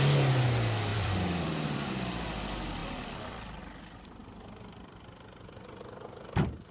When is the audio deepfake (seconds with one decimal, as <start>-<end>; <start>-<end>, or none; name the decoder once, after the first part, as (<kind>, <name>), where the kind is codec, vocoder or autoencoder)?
0.9-1.9 (vocoder, BigVGAN v2); 4.2-4.8